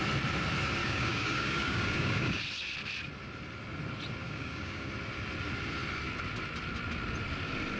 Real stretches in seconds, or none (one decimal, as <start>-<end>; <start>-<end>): 0.0-0.8; 2.4-4.2; 4.9-7.8